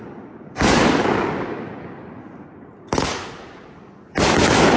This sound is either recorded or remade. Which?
recorded